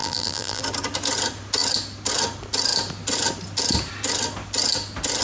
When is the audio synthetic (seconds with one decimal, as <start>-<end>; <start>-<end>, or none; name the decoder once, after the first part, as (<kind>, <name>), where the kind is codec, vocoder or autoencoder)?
0.0-0.6 (vocoder, BigVGAN v2)